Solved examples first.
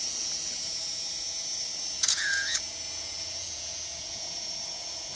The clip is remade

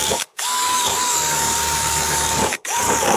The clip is remade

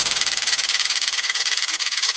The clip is recorded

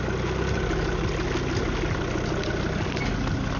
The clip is recorded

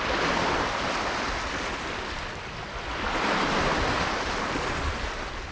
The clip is recorded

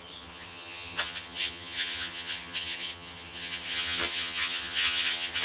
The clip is remade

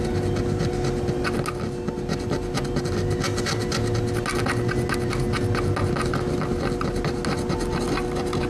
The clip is recorded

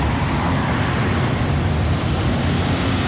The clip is recorded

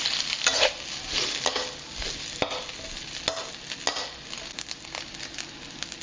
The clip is recorded